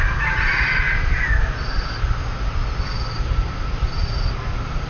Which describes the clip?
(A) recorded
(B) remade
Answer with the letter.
A